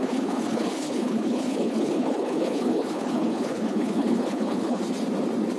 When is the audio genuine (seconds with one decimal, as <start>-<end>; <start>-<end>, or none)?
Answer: 4.8-5.6